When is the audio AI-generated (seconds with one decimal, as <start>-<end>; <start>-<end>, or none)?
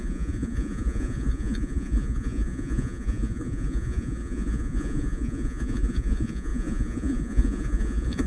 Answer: 0.0-8.3